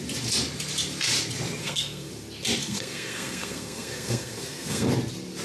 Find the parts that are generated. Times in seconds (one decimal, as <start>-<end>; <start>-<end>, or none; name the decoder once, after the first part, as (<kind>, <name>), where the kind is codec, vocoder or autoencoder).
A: 1.6-2.1 (codec, SNAC); 2.6-4.9

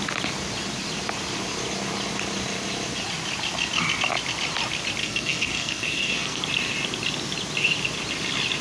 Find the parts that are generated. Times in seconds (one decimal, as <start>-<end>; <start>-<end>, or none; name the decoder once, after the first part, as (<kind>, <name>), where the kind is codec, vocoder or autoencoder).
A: 5.0-6.4 (codec, SNAC)